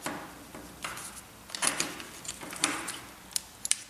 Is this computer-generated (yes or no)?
no